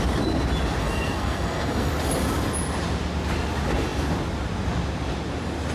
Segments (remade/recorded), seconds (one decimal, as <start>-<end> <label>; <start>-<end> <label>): 0.0-0.8 recorded; 0.8-1.9 remade; 1.9-5.7 recorded